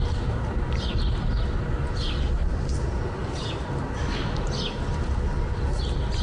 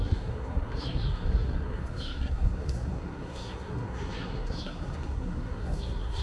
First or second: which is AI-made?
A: second